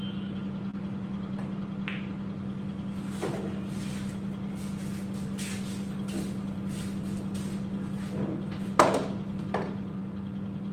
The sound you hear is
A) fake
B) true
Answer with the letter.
B